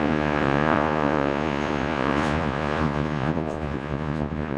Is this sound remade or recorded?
remade